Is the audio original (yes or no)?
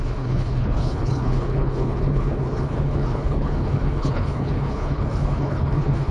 no